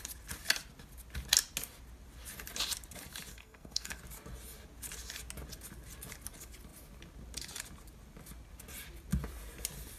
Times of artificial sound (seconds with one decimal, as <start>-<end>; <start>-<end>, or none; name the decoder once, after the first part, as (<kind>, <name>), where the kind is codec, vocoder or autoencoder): 3.3-4.0 (codec, SNAC)